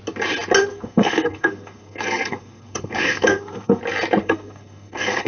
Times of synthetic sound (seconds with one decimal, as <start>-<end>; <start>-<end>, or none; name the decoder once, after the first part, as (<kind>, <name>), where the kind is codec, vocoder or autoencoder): 0.7-3.8 (codec, SNAC); 4.2-5.3